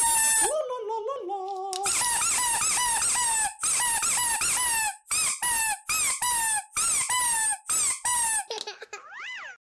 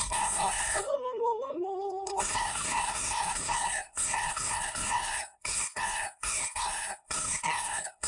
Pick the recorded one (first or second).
first